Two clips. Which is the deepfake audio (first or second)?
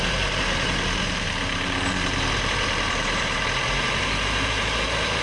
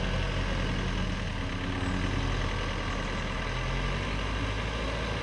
first